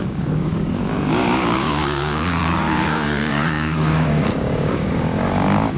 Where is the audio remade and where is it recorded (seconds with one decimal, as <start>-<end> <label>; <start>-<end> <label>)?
0.0-5.8 remade